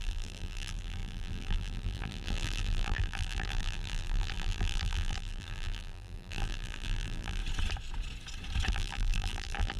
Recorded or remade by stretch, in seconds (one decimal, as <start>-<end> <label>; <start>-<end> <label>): 0.0-7.4 remade; 7.4-8.7 recorded; 8.7-9.8 remade